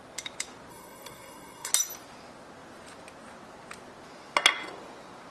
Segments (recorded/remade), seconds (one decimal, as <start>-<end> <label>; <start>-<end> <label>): 0.0-0.7 recorded; 0.7-1.7 remade; 1.7-5.3 recorded